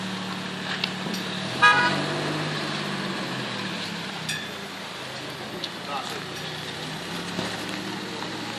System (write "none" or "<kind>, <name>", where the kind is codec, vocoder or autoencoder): none